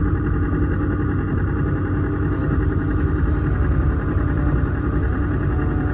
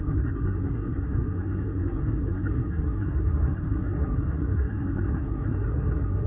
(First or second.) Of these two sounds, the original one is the first